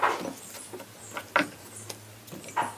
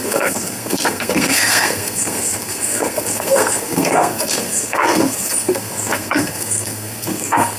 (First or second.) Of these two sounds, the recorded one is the first